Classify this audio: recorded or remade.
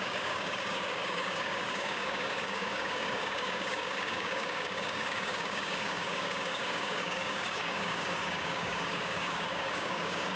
remade